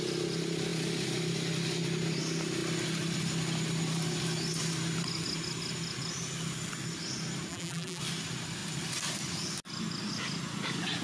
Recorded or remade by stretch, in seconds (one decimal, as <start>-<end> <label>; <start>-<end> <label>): 0.0-7.5 recorded; 7.5-8.0 remade; 8.0-11.0 recorded